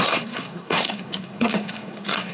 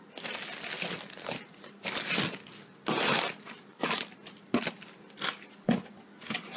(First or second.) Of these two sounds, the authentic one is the second